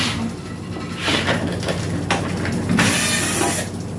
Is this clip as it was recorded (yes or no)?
yes